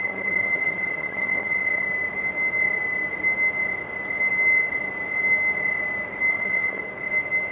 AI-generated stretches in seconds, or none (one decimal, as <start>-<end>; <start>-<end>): 0.0-1.8; 6.3-6.8